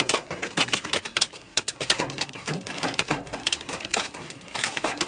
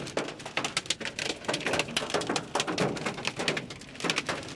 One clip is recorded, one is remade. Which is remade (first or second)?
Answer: first